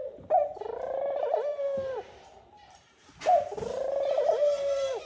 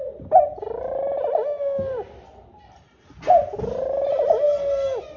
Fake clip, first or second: first